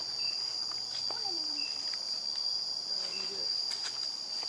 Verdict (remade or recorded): recorded